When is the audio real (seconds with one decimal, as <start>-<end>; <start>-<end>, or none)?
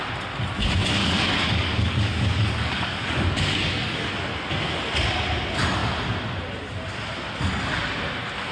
0.0-1.0; 4.1-8.5